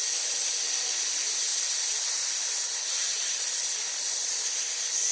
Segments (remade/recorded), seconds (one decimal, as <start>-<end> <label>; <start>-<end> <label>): 0.0-5.1 recorded